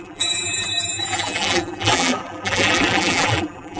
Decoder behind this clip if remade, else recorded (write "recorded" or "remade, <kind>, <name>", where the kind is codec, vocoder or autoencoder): remade, vocoder, BigVGAN v2